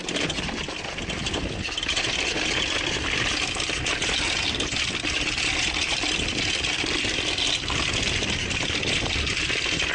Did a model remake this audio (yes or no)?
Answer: no